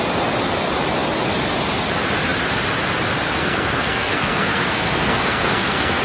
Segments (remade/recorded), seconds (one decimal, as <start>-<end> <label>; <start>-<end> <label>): 0.0-3.4 recorded; 3.4-6.0 remade